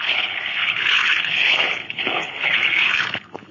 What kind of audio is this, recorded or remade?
remade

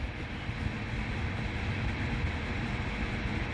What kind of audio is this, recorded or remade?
recorded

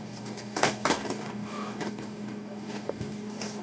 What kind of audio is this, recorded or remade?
remade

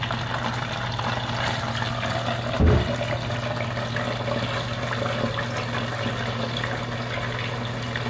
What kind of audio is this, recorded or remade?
recorded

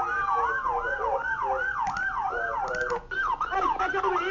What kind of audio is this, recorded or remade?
recorded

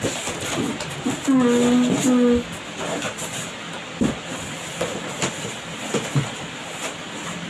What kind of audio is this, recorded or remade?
recorded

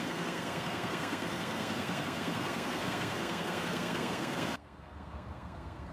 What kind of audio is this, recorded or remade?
remade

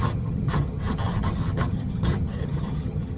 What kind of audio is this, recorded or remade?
remade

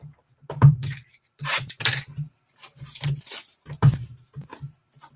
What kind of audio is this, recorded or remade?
remade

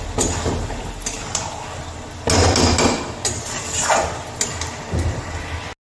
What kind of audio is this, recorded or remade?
recorded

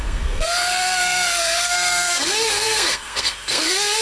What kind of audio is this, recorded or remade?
remade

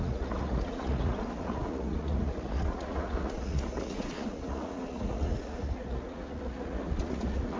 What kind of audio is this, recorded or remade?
remade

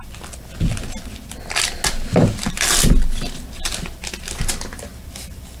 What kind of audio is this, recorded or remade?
recorded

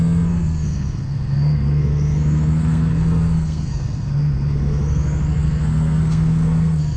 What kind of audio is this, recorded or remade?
remade